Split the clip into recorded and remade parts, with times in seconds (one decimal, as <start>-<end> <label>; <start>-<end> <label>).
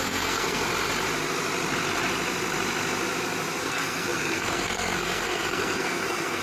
0.0-0.7 remade; 0.7-3.6 recorded; 3.6-6.4 remade